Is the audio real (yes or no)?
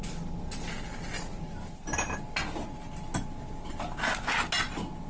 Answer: yes